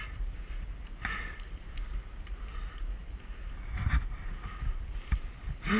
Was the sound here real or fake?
fake